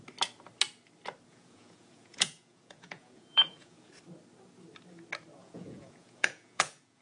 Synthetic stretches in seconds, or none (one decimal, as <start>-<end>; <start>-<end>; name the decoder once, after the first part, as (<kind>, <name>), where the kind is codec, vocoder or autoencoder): 1.3-3.9 (vocoder, Vocos); 5.4-7.0